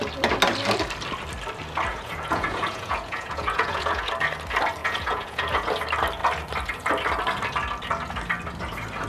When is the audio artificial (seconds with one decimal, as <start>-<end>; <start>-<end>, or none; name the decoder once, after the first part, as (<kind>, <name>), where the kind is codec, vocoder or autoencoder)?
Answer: 1.9-4.1 (vocoder, Vocos); 4.8-5.7